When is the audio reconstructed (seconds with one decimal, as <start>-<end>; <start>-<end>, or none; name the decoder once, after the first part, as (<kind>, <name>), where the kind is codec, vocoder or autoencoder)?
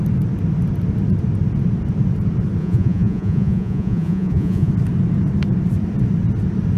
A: 2.6-4.7 (vocoder, Vocos)